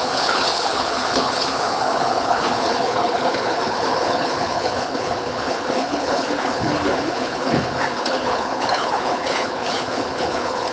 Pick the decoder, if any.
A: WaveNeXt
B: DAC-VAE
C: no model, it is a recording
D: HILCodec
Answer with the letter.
D